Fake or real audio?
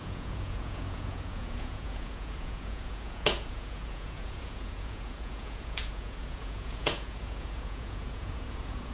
fake